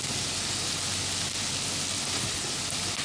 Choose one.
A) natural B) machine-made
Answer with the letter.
A